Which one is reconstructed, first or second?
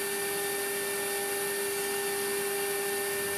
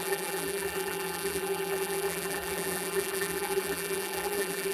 second